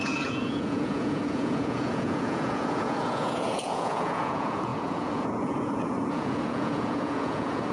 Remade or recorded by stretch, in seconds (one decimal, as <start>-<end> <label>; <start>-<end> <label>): 0.0-7.7 remade